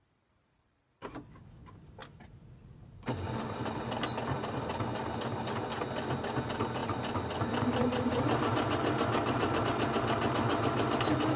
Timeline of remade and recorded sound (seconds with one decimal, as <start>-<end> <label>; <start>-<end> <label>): 0.0-2.0 recorded; 2.0-5.5 remade; 5.5-6.8 recorded; 6.8-9.6 remade; 9.6-11.4 recorded